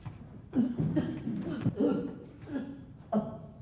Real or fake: fake